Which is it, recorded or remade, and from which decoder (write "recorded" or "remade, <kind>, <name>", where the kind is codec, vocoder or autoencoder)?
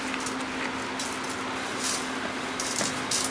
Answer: recorded